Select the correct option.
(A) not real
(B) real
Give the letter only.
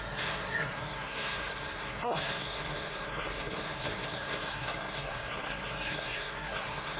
A